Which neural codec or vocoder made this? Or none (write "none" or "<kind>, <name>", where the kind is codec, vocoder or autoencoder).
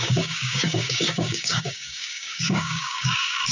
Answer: codec, DAC